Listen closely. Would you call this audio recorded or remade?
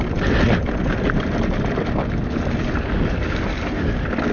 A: recorded